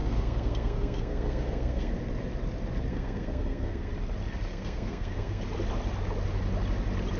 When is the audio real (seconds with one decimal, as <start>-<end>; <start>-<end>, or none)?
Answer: 1.9-2.9; 3.9-4.5; 5.4-7.2